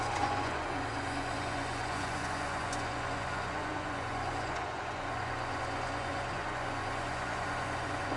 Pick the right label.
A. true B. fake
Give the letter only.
B